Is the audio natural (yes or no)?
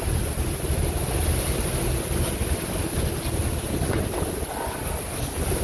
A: yes